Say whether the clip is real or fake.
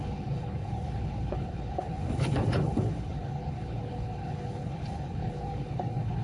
fake